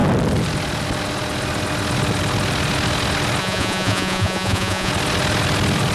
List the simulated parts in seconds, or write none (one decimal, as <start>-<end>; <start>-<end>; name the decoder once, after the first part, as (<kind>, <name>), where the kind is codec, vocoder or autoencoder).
3.4-4.9 (vocoder, Vocos)